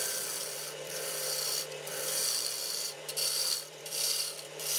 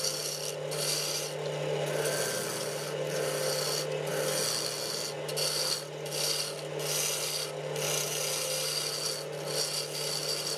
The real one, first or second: second